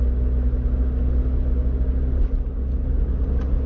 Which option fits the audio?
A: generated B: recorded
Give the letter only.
B